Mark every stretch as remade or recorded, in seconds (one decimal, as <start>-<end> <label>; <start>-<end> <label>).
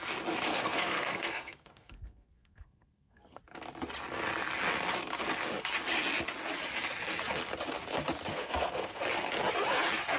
0.0-0.5 recorded; 0.5-3.4 remade; 3.4-8.3 recorded; 8.3-9.0 remade; 9.0-10.2 recorded